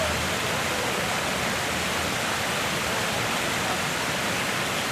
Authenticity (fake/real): real